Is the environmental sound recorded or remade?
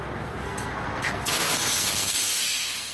remade